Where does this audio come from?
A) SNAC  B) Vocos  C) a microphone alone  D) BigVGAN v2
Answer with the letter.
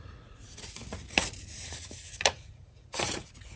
B